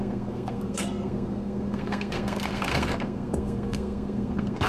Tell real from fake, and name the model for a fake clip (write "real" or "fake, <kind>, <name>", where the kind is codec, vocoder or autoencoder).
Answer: fake, codec, SNAC